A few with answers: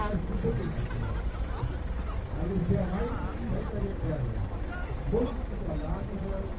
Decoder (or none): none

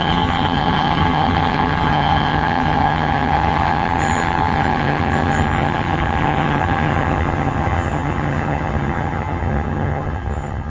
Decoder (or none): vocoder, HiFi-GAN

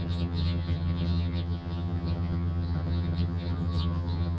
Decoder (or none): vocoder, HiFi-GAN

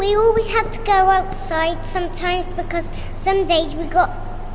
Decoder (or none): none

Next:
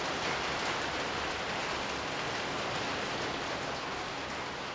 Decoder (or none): none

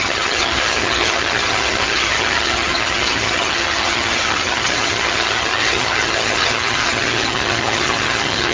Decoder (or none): vocoder, HiFi-GAN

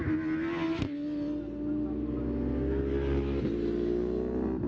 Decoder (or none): none